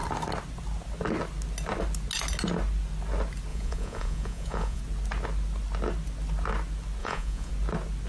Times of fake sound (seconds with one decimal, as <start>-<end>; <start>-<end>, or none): 3.5-4.8; 7.0-7.5